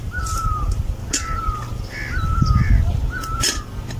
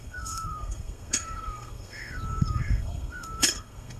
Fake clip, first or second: second